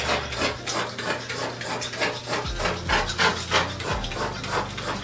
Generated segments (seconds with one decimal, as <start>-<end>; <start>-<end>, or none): none